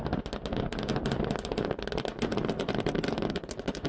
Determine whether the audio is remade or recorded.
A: recorded